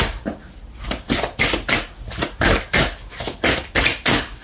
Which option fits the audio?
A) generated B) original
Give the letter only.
B